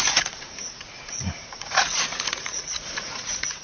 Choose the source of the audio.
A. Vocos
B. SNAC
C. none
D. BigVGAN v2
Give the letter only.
A